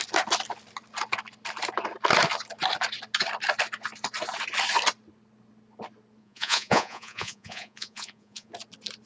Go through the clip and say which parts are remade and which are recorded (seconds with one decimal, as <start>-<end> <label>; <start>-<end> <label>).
0.0-6.2 recorded; 6.2-8.5 remade; 8.5-9.1 recorded